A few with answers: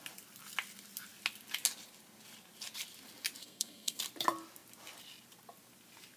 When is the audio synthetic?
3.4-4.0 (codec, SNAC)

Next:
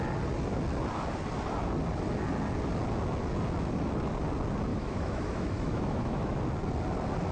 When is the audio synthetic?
4.7-6.4 (autoencoder, DAC-VAE)